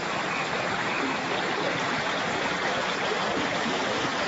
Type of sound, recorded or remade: remade